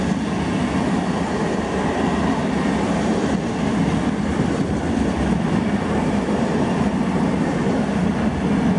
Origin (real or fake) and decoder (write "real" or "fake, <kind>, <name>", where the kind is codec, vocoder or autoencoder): real